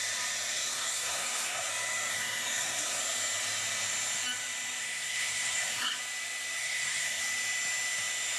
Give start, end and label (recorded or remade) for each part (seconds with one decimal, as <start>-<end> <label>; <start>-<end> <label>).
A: 0.0-0.5 recorded; 0.5-1.7 remade; 1.7-2.1 recorded; 2.1-3.0 remade; 3.0-4.8 recorded; 4.8-6.0 remade; 6.0-6.6 recorded; 6.6-7.2 remade; 7.2-8.4 recorded